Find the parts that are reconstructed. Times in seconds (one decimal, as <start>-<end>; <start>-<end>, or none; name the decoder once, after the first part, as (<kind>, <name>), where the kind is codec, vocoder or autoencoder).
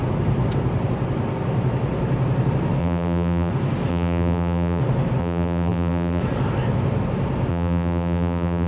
2.8-3.5 (vocoder, BigVGAN v2); 3.9-4.8; 5.2-6.2; 7.5-8.7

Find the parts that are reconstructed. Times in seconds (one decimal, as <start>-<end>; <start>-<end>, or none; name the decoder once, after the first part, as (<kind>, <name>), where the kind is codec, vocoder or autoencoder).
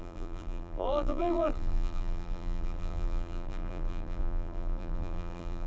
0.0-5.7 (vocoder, BigVGAN v2)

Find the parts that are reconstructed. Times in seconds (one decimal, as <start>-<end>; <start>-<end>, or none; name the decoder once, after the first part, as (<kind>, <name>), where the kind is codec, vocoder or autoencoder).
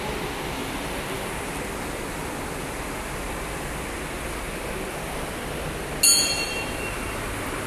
0.6-1.5 (vocoder, BigVGAN v2)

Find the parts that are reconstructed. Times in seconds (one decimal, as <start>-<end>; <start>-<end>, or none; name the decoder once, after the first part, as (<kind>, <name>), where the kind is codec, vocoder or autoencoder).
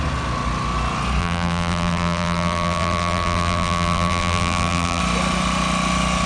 1.2-5.0 (vocoder, BigVGAN v2)